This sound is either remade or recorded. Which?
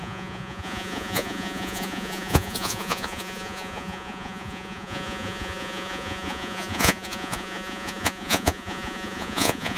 remade